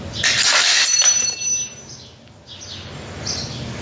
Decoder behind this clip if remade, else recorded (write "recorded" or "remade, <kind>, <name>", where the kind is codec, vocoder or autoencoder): recorded